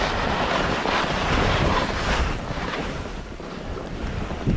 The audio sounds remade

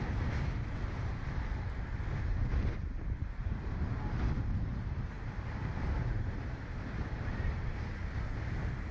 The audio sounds remade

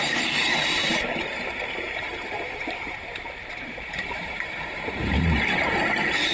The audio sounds remade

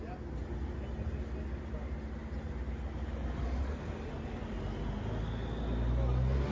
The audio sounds recorded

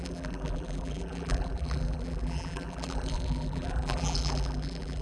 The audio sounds remade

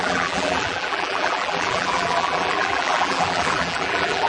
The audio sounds remade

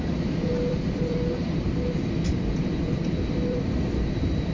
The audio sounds remade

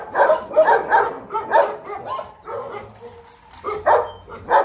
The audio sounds recorded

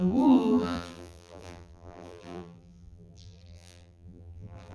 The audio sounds remade